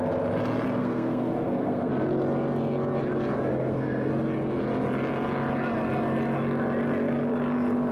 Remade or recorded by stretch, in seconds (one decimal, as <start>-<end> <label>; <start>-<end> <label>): 0.0-0.8 recorded; 0.8-1.9 remade; 1.9-3.5 recorded; 3.5-4.1 remade; 4.1-7.9 recorded